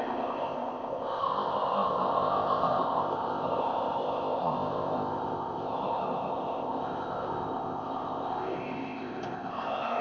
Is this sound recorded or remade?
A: remade